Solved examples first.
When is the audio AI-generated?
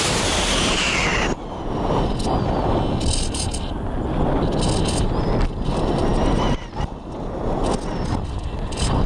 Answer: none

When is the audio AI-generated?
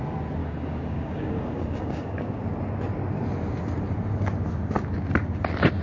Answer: 0.4-2.4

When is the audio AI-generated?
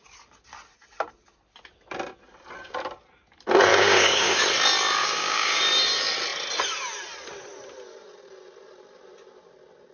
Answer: 3.7-4.4; 5.0-5.6